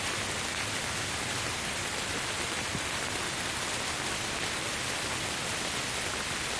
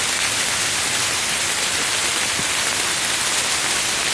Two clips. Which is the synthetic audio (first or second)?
first